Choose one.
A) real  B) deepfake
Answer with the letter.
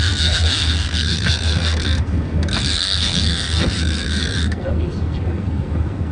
B